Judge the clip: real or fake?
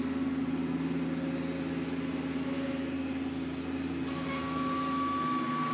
real